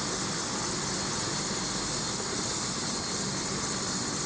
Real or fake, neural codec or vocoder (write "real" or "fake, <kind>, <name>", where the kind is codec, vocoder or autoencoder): real